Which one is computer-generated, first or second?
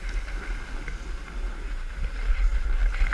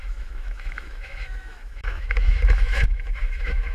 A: second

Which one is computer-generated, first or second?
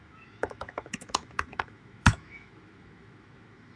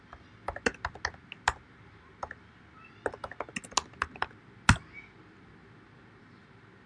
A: first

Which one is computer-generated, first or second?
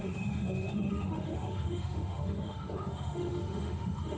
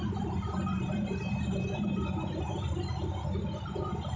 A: first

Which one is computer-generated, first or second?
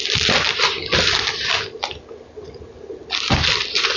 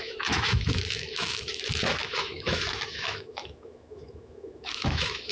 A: second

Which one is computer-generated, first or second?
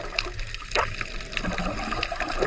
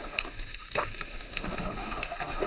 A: second